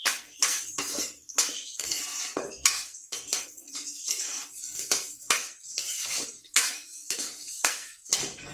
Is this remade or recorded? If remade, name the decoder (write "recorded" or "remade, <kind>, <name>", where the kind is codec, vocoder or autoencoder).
remade, codec, SNAC